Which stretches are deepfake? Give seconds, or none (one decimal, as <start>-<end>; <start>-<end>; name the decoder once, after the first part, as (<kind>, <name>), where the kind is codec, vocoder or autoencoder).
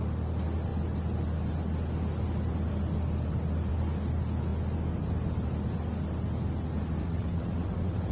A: 7.0-8.1 (vocoder, WaveNeXt)